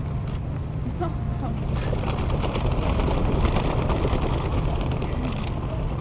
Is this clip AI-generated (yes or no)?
no